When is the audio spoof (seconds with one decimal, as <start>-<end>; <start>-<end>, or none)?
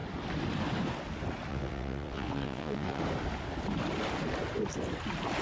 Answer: 1.5-3.0